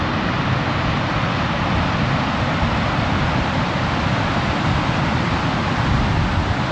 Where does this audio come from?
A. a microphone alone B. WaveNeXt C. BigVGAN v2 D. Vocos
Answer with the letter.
A